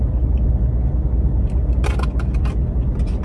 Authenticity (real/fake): real